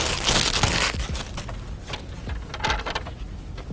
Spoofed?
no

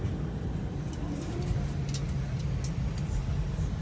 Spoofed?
no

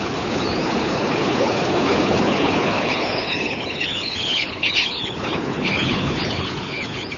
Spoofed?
yes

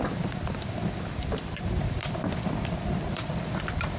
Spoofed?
yes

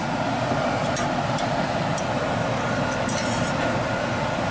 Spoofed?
no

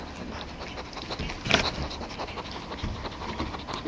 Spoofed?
no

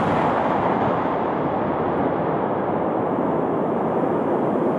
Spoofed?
no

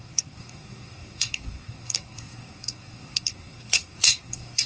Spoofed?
yes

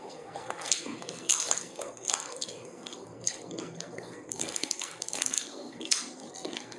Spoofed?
yes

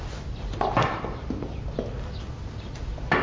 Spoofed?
no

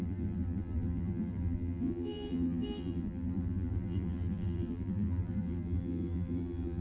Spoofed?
yes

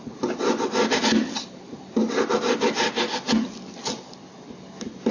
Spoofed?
no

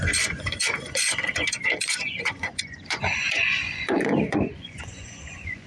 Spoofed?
yes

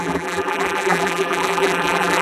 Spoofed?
yes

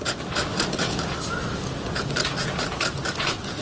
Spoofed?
no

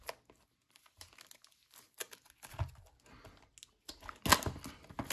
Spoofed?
no